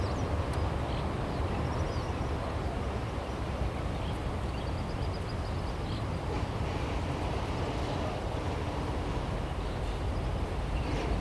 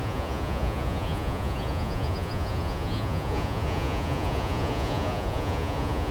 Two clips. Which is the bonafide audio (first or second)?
first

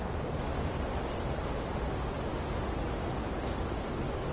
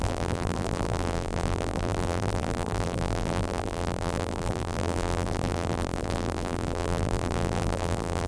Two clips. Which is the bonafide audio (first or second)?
first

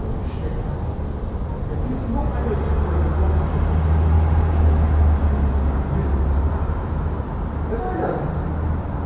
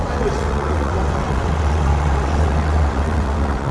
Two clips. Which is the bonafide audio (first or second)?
first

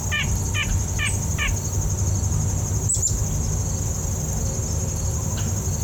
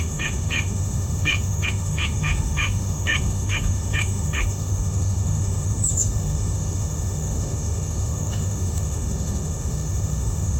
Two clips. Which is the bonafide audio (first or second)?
first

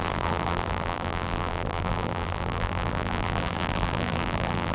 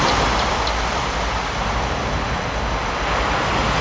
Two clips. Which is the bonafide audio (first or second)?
second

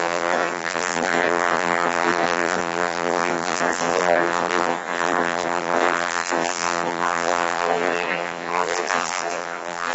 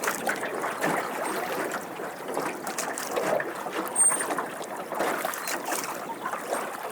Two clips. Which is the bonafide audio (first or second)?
second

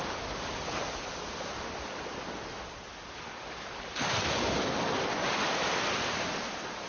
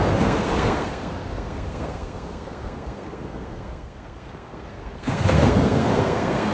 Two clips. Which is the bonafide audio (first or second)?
first